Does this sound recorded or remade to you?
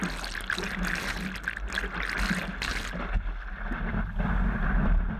recorded